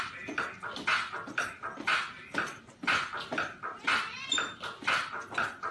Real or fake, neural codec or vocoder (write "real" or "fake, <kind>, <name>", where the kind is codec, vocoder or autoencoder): real